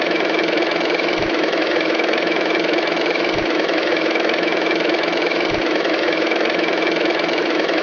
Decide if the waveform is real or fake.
fake